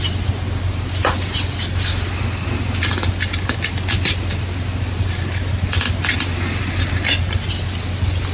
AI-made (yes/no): no